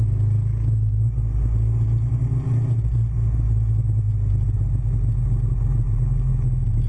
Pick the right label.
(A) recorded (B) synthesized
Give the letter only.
A